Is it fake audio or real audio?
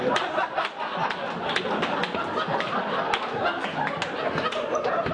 real